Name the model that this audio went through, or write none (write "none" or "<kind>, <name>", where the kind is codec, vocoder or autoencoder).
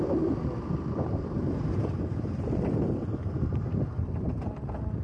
vocoder, BigVGAN v2